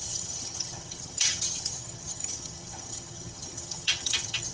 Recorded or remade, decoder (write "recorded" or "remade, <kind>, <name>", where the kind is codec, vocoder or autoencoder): remade, vocoder, HiFi-GAN